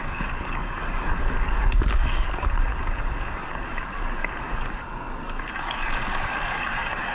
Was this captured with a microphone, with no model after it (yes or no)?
no